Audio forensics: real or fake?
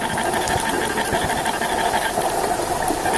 real